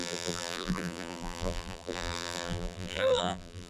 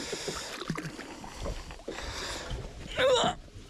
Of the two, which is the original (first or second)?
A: second